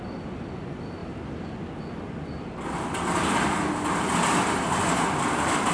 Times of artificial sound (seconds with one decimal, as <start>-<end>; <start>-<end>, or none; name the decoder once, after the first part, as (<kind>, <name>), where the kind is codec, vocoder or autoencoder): none